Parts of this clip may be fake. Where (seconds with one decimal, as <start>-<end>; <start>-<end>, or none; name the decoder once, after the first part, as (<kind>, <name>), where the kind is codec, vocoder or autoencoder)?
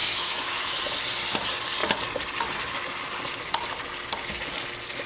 0.0-0.8 (autoencoder, DAC-VAE)